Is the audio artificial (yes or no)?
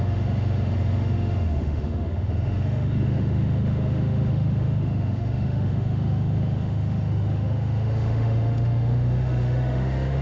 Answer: yes